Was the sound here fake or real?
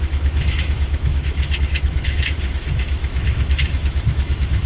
fake